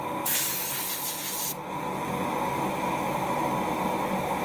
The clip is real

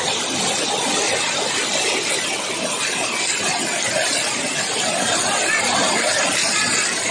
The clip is real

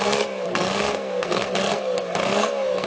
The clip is fake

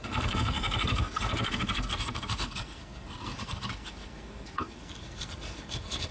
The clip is fake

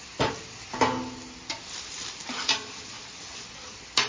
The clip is real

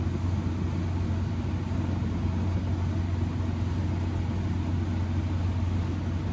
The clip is real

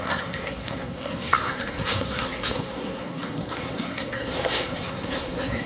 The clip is fake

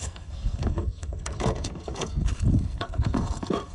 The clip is fake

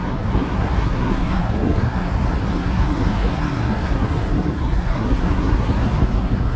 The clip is fake